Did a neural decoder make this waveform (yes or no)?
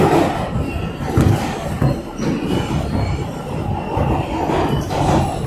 no